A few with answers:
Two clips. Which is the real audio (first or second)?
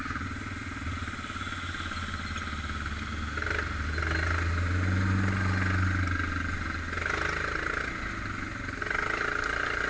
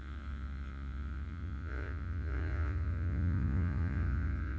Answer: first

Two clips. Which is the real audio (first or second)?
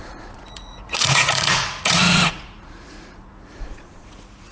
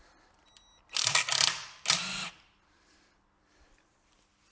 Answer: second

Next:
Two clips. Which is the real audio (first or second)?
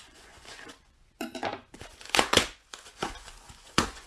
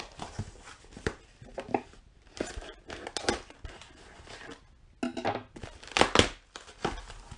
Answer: second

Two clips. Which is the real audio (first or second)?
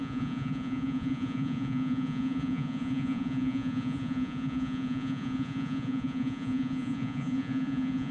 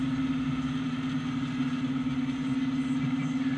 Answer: second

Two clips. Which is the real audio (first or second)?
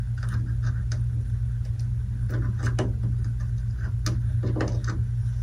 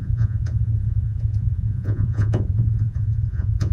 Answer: first